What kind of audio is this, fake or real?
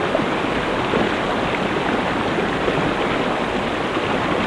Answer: real